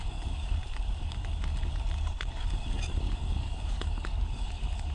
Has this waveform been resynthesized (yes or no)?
yes